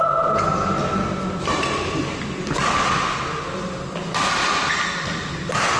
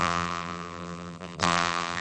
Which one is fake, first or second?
second